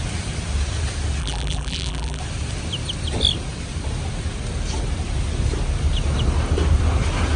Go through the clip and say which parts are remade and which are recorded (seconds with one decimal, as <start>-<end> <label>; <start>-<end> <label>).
0.0-1.2 recorded; 1.2-2.2 remade; 2.2-7.4 recorded